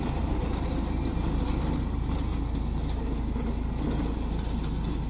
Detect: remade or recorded recorded